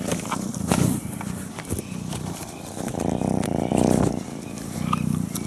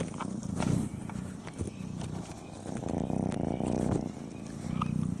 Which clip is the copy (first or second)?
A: first